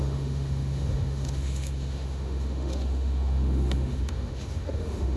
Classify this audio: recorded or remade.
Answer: remade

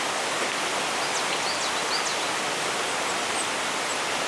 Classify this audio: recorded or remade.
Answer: recorded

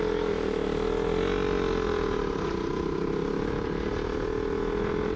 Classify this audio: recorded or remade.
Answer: recorded